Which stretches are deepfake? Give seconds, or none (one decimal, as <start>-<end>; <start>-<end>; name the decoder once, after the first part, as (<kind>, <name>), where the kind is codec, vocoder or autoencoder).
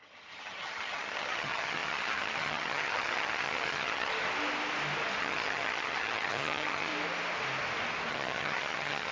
0.0-4.1 (vocoder, HiFi-GAN); 5.2-6.9; 8.1-9.1